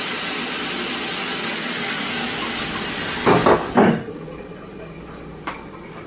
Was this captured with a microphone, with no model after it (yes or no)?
yes